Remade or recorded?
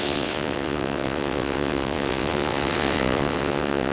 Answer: remade